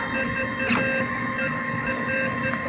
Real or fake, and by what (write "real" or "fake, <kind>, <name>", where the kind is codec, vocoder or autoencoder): real